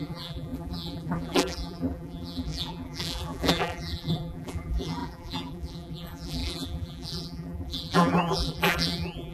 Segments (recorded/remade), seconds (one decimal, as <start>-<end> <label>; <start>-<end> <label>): 0.0-9.3 remade